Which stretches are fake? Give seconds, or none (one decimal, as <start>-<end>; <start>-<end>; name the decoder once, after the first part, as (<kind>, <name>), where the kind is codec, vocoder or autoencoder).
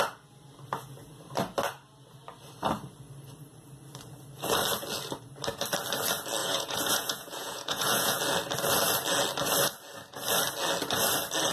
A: 6.4-8.2 (vocoder, Vocos)